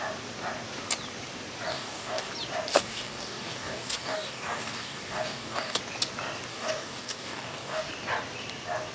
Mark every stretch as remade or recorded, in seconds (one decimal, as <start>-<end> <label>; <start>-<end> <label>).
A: 0.0-1.7 recorded; 1.7-2.3 remade; 2.3-2.7 recorded; 2.7-5.8 remade; 5.8-6.5 recorded; 6.5-7.9 remade; 7.9-8.9 recorded